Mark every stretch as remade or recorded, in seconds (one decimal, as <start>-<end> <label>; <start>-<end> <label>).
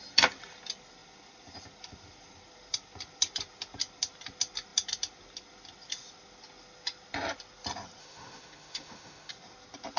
0.0-8.0 recorded; 8.0-9.3 remade; 9.3-10.0 recorded